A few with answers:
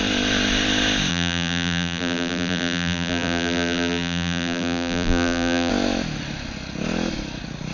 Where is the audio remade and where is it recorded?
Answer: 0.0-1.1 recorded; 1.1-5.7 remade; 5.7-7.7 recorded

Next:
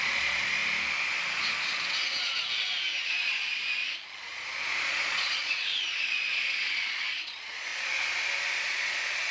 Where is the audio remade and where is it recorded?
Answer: 0.0-0.6 remade; 0.6-3.1 recorded; 3.1-3.8 remade; 3.8-4.6 recorded; 4.6-7.7 remade; 7.7-8.6 recorded; 8.6-9.3 remade

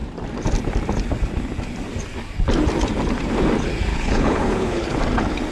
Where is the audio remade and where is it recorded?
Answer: 0.0-3.9 recorded; 3.9-5.0 remade; 5.0-5.5 recorded